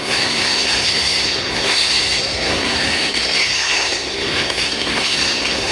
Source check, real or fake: fake